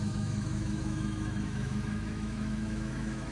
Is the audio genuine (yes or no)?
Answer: no